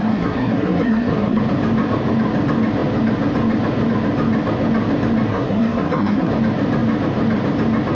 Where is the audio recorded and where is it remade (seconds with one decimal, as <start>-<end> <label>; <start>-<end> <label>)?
0.0-1.4 remade; 1.4-5.3 recorded; 5.3-6.3 remade; 6.3-7.9 recorded